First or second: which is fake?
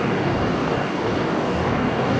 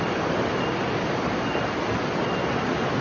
first